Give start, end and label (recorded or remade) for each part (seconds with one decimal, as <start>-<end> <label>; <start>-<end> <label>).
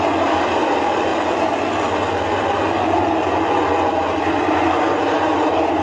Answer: 0.0-1.1 remade; 1.1-4.2 recorded; 4.2-5.8 remade